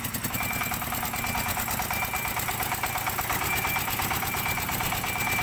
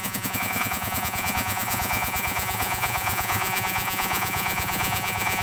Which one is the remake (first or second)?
second